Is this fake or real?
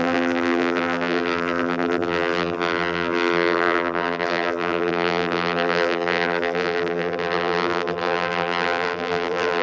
fake